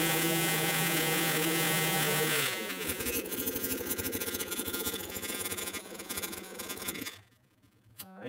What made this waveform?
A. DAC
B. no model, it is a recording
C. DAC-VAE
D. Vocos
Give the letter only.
D